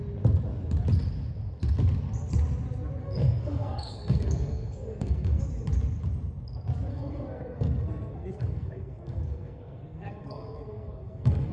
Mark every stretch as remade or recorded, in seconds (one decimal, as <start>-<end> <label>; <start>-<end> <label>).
0.0-3.0 recorded; 3.0-5.4 remade; 5.4-6.9 recorded; 6.9-11.5 remade